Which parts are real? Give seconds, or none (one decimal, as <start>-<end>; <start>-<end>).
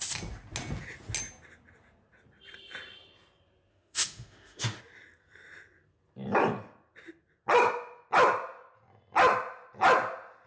0.0-3.7; 4.8-10.5